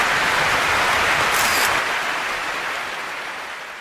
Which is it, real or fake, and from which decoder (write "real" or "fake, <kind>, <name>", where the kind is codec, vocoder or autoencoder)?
fake, vocoder, BigVGAN v2